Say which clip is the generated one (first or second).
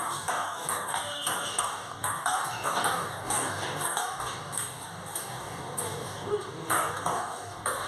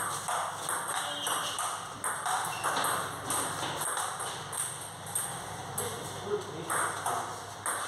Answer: first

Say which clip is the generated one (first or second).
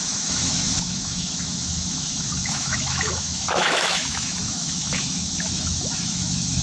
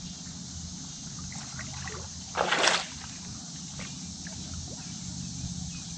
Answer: first